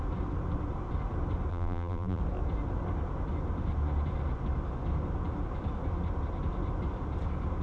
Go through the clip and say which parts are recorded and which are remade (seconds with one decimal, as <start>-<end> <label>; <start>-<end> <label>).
0.0-1.5 recorded; 1.5-2.2 remade; 2.2-7.6 recorded